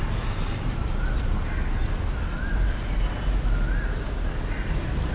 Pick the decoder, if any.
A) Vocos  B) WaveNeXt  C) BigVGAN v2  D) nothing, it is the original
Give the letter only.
D